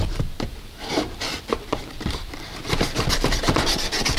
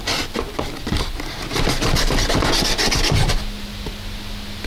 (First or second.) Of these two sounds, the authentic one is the second